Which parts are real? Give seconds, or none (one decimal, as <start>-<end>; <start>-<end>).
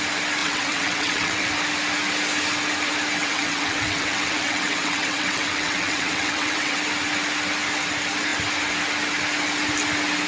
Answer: 0.0-0.4; 1.5-3.2; 6.8-10.3